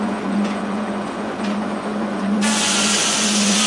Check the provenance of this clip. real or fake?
fake